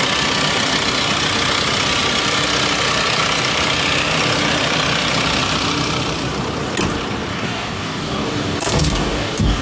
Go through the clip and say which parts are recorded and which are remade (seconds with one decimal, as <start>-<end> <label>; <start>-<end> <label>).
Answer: 0.0-7.3 recorded; 7.3-9.6 remade